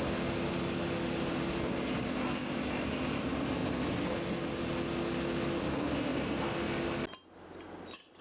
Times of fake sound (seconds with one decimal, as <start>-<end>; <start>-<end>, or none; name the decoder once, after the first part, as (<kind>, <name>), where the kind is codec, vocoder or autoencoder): none